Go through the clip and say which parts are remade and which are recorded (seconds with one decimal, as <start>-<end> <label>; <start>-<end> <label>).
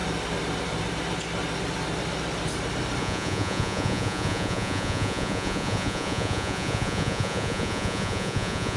0.0-3.0 recorded; 3.0-8.8 remade